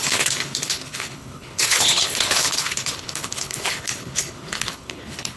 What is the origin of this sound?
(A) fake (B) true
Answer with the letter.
A